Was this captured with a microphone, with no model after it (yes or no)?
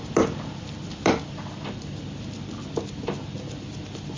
no